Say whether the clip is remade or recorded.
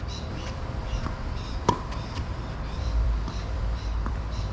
remade